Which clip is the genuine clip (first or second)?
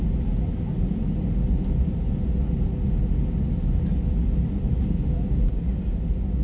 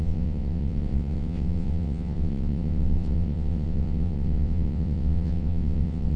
first